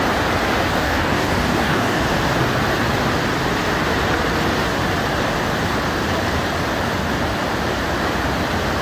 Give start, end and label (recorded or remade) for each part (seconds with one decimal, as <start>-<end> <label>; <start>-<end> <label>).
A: 0.0-0.7 recorded; 0.7-2.0 remade; 2.0-8.8 recorded